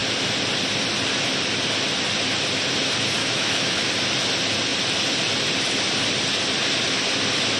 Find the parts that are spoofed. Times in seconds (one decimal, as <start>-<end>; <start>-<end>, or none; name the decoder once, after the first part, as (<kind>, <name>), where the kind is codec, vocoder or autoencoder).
3.2-3.9 (autoencoder, DAC-VAE)